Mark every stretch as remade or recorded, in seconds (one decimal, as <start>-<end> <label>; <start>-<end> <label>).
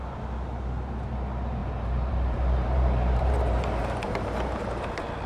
0.0-1.6 recorded; 1.6-4.6 remade; 4.6-5.3 recorded